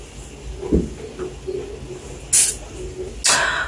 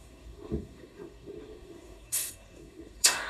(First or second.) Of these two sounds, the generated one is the second